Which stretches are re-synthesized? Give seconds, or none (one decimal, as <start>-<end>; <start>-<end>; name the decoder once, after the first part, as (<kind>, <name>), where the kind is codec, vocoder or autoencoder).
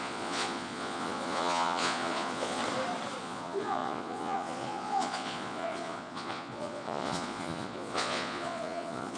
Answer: 0.0-2.6 (vocoder, Vocos); 3.2-9.2